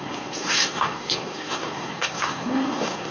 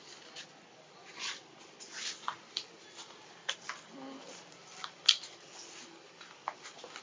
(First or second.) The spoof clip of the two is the first